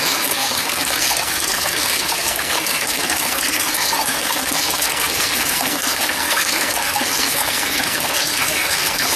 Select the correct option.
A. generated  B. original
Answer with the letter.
A